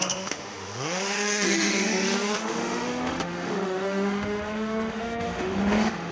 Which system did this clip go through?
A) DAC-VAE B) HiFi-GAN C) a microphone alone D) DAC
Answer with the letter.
A